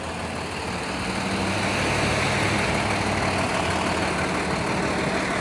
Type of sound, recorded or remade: recorded